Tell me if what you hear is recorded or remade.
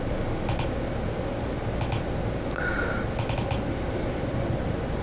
recorded